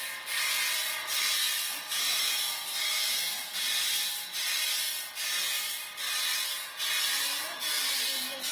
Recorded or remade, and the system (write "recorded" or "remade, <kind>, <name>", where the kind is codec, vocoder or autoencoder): recorded